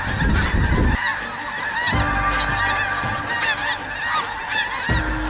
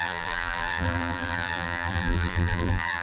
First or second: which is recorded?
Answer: first